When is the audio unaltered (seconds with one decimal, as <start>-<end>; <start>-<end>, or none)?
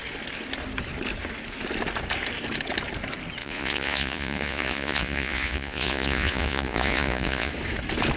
0.0-3.4; 7.5-8.2